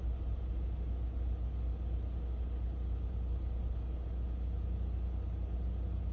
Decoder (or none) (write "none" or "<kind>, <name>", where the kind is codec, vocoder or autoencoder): none